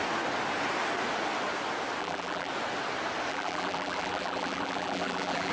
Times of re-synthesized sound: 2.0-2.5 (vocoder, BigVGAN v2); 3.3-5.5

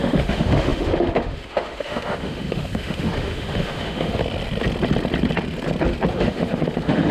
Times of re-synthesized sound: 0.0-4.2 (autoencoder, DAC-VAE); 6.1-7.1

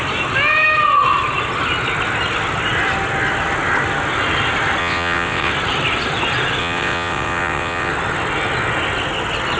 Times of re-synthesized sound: 4.8-5.5 (vocoder, WaveNeXt); 6.6-7.9